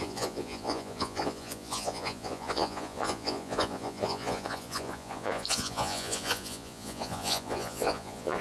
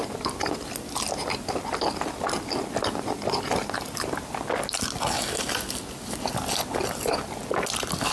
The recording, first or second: second